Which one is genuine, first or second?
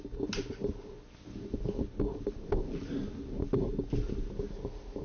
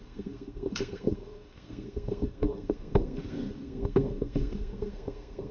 first